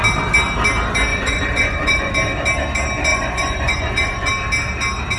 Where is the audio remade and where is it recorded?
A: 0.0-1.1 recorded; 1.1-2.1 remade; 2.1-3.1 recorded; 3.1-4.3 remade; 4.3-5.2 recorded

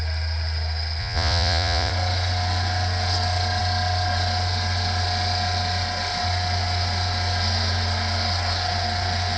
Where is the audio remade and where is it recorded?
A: 0.0-1.0 recorded; 1.0-1.9 remade; 1.9-9.4 recorded

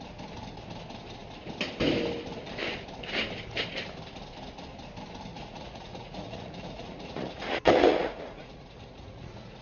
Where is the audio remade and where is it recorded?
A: 0.0-5.3 recorded; 5.3-9.6 remade